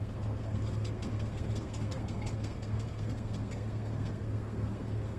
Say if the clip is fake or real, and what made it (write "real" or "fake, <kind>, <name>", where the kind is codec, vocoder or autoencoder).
fake, codec, SNAC